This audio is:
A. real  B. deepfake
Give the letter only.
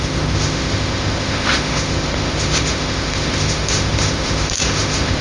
B